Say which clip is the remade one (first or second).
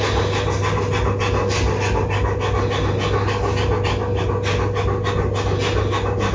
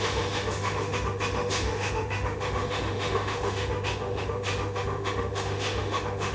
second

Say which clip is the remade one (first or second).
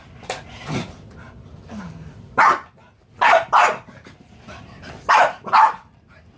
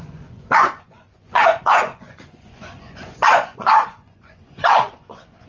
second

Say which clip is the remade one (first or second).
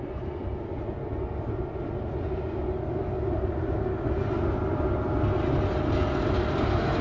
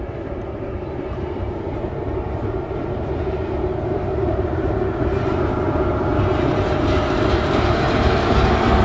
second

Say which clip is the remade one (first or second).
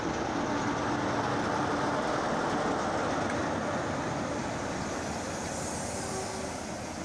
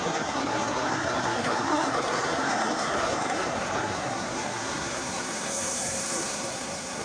second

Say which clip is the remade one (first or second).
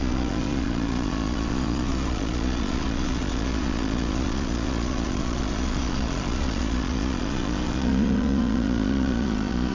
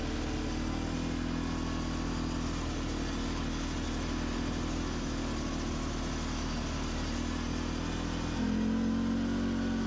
first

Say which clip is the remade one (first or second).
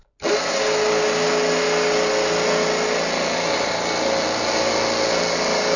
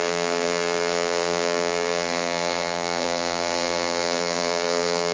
second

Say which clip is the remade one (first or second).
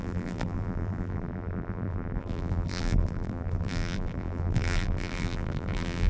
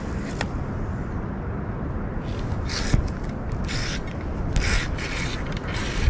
first